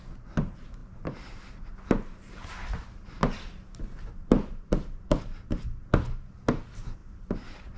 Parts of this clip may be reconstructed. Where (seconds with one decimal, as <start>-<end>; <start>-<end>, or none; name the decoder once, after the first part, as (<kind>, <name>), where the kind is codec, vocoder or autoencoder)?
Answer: none